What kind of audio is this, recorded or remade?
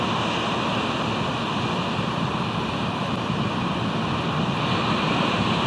recorded